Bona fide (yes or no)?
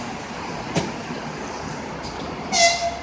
yes